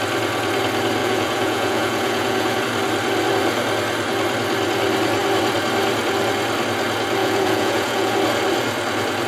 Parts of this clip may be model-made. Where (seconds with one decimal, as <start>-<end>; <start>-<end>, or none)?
1.0-2.6; 7.2-8.1

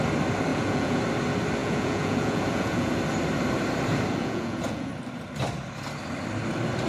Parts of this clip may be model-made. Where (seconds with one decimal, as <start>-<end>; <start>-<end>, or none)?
0.5-1.0; 1.6-2.9; 4.2-4.9

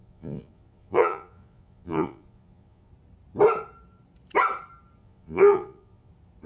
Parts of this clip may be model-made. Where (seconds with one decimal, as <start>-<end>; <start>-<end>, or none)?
0.0-2.9; 5.0-6.1

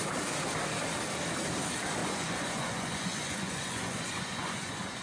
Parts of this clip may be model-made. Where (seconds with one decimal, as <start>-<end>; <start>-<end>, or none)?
2.0-5.0

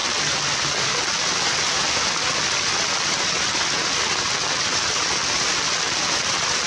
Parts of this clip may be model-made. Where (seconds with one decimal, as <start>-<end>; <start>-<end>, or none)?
none

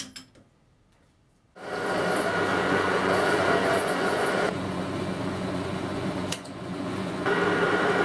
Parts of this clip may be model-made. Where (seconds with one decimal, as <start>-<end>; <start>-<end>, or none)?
2.5-7.3

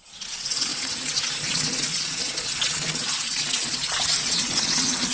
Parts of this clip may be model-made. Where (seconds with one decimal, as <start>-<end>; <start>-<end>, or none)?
0.0-5.1